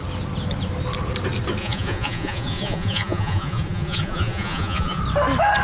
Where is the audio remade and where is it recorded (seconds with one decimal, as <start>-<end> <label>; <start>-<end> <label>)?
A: 0.0-1.6 recorded; 1.6-5.0 remade; 5.0-5.6 recorded